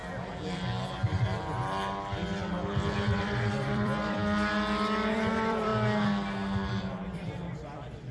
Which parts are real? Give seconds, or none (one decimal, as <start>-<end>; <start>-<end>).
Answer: 0.0-3.2; 4.2-5.1; 5.7-6.8